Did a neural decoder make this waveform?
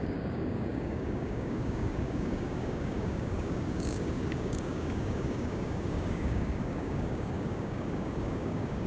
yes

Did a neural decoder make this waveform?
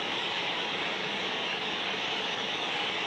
yes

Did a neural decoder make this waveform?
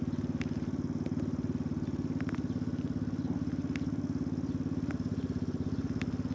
no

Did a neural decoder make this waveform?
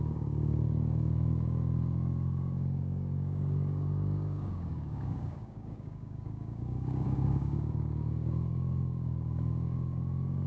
yes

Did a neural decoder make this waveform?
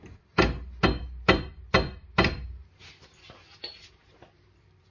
no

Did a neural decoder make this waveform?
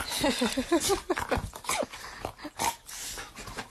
no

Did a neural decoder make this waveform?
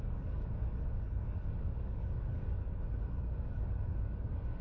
yes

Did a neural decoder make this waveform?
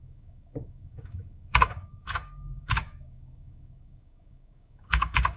yes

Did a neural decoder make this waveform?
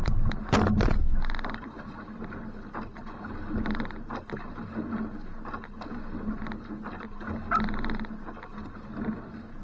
no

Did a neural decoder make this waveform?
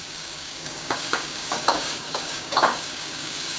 yes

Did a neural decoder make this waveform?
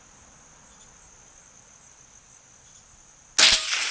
no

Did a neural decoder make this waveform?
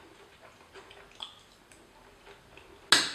no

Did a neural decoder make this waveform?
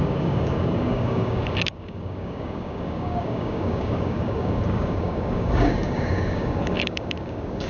yes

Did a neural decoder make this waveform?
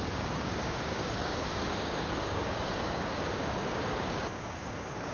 yes